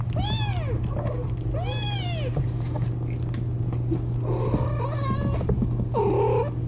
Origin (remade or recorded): recorded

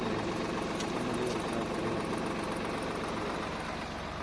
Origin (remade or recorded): recorded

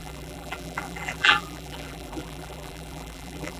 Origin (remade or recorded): remade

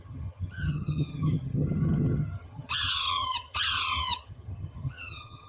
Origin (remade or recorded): remade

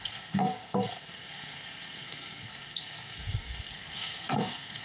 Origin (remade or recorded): remade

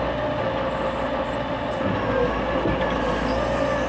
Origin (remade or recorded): recorded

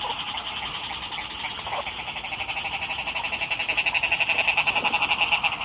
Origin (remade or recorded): recorded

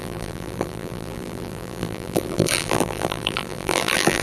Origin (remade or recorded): remade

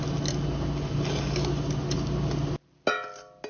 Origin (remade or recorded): recorded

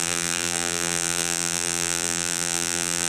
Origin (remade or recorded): remade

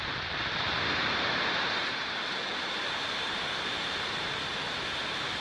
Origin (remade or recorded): remade